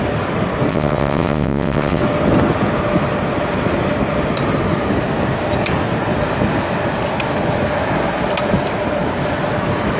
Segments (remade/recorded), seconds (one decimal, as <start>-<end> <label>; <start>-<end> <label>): 0.0-0.7 recorded; 0.7-2.0 remade; 2.0-10.0 recorded

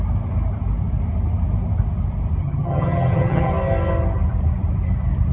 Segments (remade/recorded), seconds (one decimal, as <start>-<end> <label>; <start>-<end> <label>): 0.0-2.4 recorded; 2.4-3.5 remade; 3.5-5.3 recorded